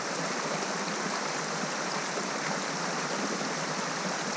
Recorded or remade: remade